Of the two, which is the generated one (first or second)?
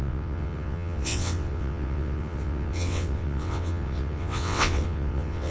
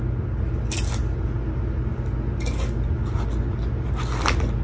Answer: first